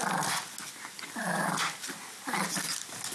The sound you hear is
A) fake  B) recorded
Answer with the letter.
B